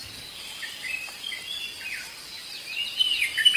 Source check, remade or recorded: recorded